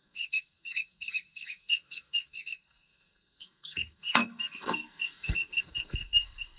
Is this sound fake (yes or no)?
yes